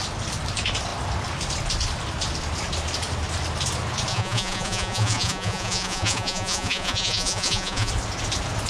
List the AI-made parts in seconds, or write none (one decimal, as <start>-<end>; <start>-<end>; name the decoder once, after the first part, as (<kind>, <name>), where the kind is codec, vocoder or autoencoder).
4.1-7.9 (vocoder, Vocos)